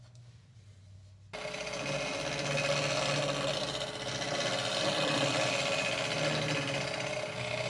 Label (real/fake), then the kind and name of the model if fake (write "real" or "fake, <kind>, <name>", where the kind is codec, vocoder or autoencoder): real